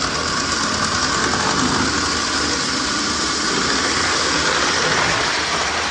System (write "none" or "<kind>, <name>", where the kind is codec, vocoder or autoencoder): none